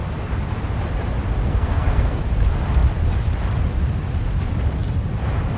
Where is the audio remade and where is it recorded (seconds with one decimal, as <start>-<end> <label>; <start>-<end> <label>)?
0.0-1.4 recorded; 1.4-2.2 remade; 2.2-5.6 recorded